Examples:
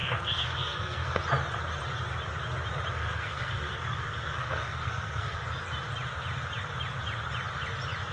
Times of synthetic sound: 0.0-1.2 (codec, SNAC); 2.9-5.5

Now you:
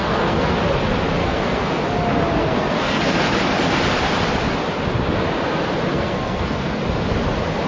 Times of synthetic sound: 0.0-0.6 (codec, SNAC); 1.2-1.8; 2.4-3.0; 5.9-6.8

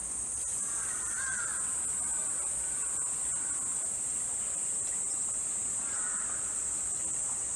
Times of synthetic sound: none

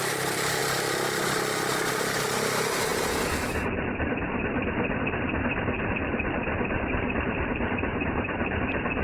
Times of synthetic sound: 0.0-0.6 (vocoder, BigVGAN v2); 1.9-9.0

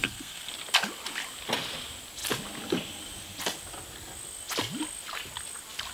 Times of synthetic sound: 0.0-0.5 (codec, SNAC)

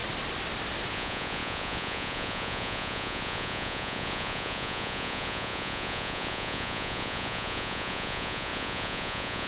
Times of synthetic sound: 0.9-9.5 (vocoder, Vocos)

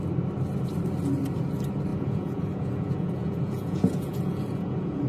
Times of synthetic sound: 1.9-5.1 (vocoder, Vocos)

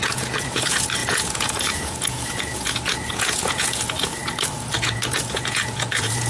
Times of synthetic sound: 0.0-4.2 (vocoder, Vocos); 4.7-6.3